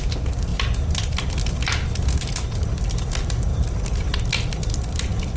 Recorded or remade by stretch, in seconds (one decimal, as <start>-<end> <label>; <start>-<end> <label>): 0.0-5.4 recorded